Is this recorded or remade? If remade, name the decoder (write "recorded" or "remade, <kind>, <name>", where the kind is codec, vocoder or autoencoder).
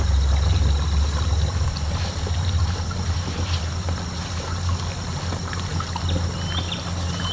recorded